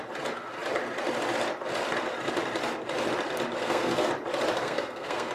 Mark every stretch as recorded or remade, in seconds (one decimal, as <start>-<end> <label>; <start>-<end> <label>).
0.0-3.6 recorded; 3.6-4.1 remade; 4.1-4.6 recorded; 4.6-5.3 remade